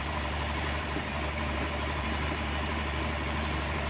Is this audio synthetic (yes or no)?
yes